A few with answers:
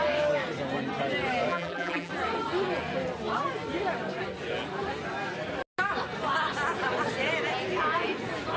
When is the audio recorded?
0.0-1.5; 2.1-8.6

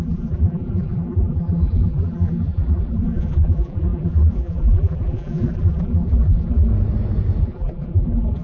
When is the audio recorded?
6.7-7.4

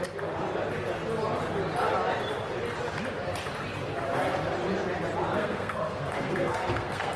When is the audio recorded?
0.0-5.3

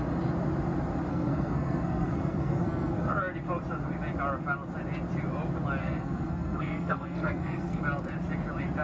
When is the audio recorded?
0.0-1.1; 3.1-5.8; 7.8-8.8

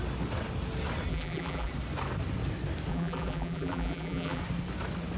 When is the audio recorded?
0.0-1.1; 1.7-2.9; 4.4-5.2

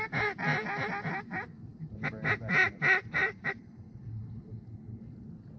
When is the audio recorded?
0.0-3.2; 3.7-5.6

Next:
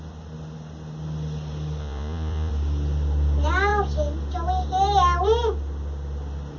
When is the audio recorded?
0.0-1.8; 2.5-6.6